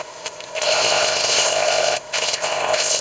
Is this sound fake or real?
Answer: fake